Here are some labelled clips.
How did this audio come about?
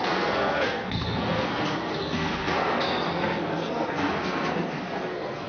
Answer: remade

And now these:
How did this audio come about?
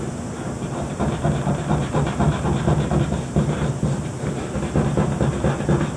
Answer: recorded